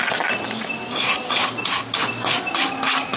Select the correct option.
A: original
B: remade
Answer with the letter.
A